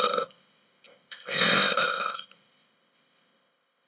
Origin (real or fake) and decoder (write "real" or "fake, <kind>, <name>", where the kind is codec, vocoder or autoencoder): fake, codec, ZipCodec